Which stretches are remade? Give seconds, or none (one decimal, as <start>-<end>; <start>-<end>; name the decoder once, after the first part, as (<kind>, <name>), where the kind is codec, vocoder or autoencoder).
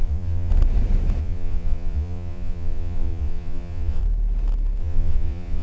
0.0-0.5 (vocoder, Vocos); 1.2-4.0; 4.8-5.6